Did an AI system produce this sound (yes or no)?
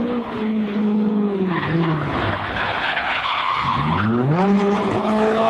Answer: yes